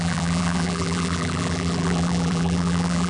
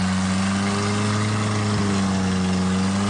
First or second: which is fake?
first